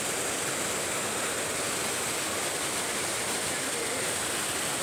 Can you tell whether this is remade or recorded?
recorded